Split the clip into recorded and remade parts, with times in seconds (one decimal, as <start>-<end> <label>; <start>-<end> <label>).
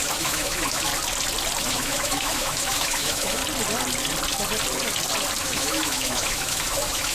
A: 0.0-0.9 remade; 0.9-1.6 recorded; 1.6-3.4 remade; 3.4-5.4 recorded; 5.4-7.1 remade